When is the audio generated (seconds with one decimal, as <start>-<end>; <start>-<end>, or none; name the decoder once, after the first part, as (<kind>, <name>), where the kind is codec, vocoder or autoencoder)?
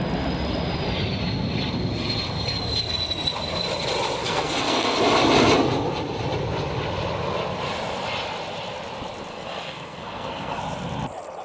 4.2-5.0 (codec, SNAC); 9.3-10.6